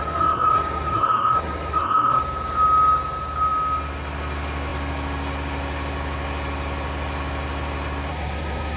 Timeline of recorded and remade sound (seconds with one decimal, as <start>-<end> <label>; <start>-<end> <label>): 0.0-2.2 remade; 2.2-8.1 recorded; 8.1-8.8 remade

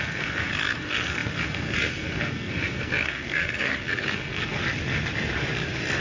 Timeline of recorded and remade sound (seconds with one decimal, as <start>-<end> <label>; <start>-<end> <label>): 0.0-4.6 remade; 4.6-6.0 recorded

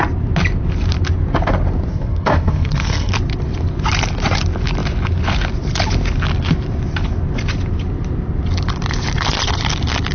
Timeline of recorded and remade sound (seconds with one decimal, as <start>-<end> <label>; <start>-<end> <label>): 0.0-1.9 recorded; 1.9-3.1 remade; 3.1-10.1 recorded

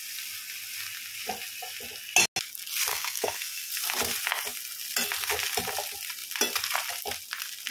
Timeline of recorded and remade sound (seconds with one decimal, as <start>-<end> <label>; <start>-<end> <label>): 0.0-2.9 recorded; 2.9-3.7 remade; 3.7-7.7 recorded

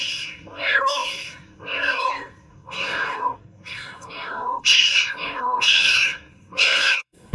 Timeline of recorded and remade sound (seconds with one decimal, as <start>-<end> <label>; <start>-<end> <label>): 0.0-7.3 remade